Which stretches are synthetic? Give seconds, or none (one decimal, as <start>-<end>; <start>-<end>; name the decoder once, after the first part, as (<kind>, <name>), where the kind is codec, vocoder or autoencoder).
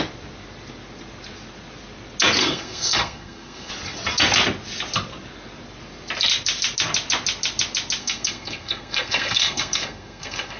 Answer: 2.4-3.7 (codec, SNAC); 8.0-10.6